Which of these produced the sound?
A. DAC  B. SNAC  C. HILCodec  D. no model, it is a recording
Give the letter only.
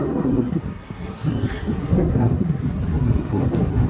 B